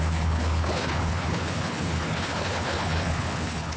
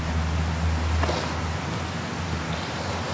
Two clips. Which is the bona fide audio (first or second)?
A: second